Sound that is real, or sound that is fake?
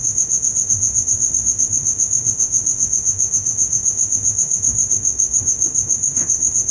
fake